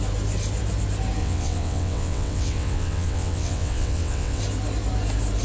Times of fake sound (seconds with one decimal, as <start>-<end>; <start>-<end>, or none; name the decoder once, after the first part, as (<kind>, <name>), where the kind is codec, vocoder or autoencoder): 1.2-4.4 (vocoder, WaveNeXt)